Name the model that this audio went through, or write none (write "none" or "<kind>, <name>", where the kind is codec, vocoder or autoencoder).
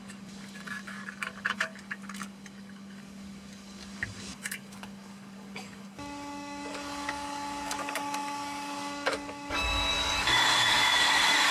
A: codec, DAC